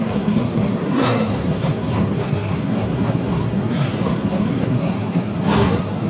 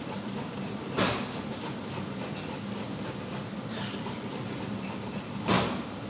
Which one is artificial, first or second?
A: first